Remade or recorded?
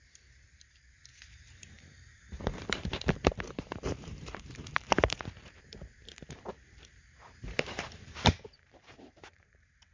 remade